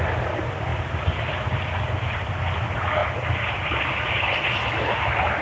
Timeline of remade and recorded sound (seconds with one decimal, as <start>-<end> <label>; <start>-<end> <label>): 0.0-5.4 recorded